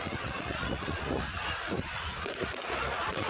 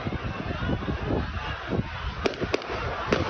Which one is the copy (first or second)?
first